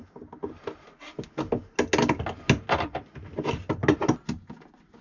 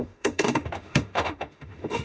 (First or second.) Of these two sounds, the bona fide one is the first